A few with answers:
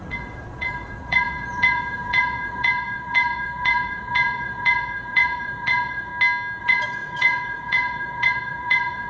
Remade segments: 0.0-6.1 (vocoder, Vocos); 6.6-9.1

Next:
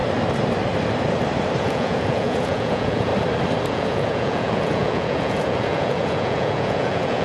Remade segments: 1.6-3.1 (vocoder, Vocos); 3.7-7.2